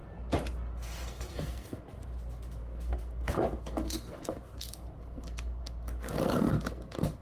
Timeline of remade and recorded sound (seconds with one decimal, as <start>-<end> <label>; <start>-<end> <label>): 0.0-0.7 recorded; 0.7-7.2 remade